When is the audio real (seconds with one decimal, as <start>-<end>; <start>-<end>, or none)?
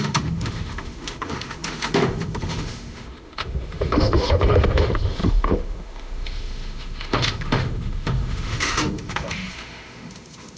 none